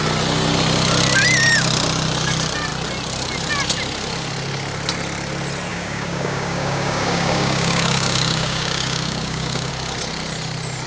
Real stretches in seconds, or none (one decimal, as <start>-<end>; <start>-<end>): 0.0-5.7; 9.7-10.9